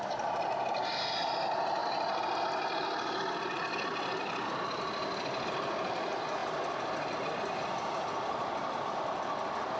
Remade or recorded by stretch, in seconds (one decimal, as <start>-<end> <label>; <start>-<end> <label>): 0.0-9.8 recorded